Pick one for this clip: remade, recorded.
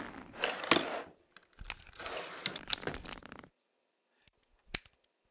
recorded